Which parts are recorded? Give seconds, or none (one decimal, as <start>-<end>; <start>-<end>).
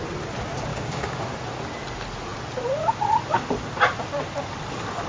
0.0-0.7; 1.2-5.1